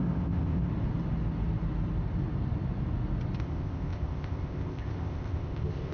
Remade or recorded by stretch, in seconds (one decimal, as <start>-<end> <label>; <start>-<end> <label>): 0.0-0.7 remade; 0.7-3.4 recorded; 3.4-5.9 remade